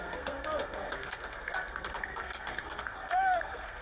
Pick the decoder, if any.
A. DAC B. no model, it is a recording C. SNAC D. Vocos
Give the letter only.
C